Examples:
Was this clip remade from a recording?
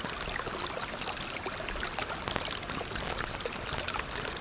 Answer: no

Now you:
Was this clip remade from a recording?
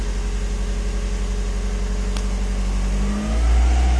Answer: no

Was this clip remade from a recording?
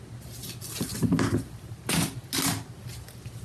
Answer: no